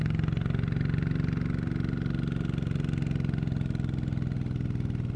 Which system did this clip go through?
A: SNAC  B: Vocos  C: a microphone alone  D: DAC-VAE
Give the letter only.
C